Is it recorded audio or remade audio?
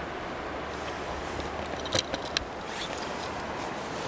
recorded